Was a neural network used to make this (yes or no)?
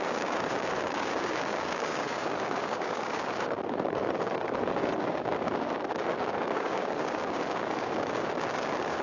yes